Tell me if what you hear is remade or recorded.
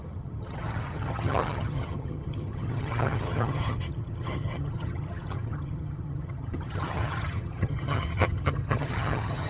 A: remade